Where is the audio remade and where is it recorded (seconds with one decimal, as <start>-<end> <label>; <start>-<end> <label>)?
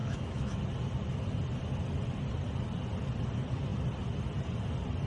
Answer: 0.0-0.6 remade; 0.6-5.1 recorded